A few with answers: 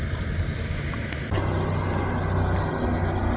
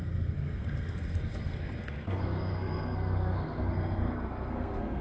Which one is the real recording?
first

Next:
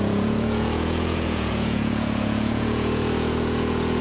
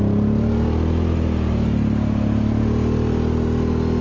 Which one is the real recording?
second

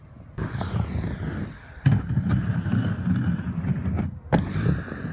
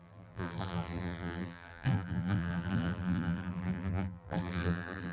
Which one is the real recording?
first